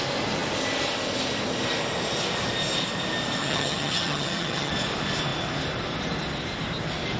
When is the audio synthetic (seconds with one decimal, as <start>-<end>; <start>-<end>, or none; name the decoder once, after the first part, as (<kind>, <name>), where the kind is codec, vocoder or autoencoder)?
3.4-4.7 (vocoder, HiFi-GAN)